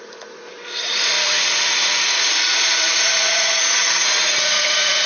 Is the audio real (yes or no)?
no